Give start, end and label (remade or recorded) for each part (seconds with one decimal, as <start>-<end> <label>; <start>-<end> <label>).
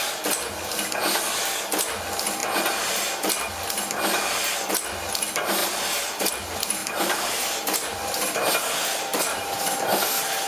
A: 0.0-5.6 recorded; 5.6-6.3 remade; 6.3-6.8 recorded; 6.8-8.5 remade; 8.5-9.1 recorded; 9.1-9.6 remade; 9.6-10.5 recorded